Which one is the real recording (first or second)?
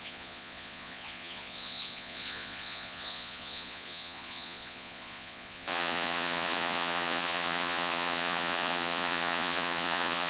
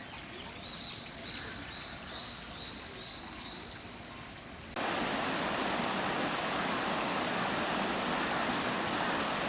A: second